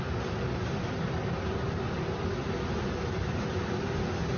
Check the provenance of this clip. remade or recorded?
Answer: recorded